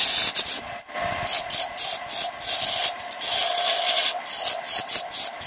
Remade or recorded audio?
recorded